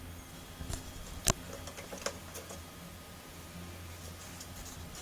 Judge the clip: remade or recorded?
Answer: recorded